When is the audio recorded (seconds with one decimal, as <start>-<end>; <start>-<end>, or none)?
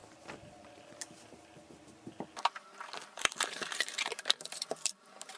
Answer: 0.0-3.2